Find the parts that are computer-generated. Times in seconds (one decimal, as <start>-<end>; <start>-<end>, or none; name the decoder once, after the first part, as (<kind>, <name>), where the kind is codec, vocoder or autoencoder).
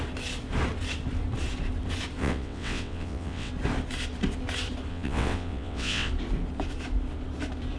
2.2-3.5 (vocoder, WaveNeXt); 4.9-6.1